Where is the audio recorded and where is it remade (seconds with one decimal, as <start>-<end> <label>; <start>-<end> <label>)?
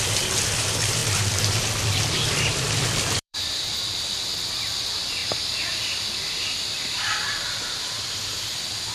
0.0-5.2 remade; 5.2-8.1 recorded; 8.1-8.9 remade